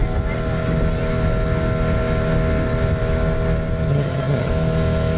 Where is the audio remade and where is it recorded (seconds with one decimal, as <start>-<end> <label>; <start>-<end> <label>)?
0.0-3.9 recorded; 3.9-4.5 remade; 4.5-5.2 recorded

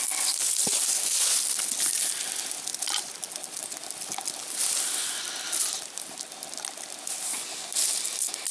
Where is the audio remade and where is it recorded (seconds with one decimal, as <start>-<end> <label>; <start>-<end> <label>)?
0.0-8.5 recorded

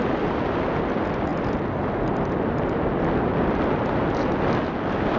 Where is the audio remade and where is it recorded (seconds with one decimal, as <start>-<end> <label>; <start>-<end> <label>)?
0.0-5.2 recorded

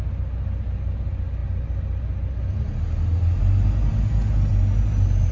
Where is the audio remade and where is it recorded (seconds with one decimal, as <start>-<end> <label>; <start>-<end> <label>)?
0.0-5.3 recorded